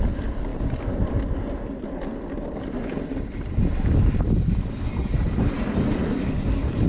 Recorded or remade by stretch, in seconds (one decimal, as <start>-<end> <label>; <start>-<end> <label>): 0.0-6.9 recorded